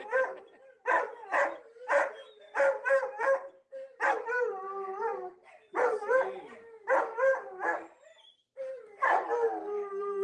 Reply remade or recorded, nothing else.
remade